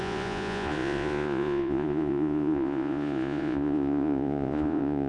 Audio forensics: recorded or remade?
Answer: remade